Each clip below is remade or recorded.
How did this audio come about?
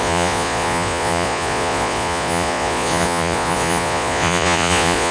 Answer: remade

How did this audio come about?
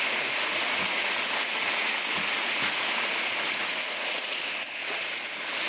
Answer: remade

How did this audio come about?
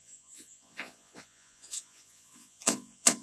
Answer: remade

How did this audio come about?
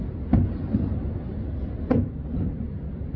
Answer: recorded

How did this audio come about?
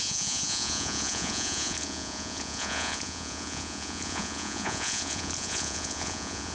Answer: remade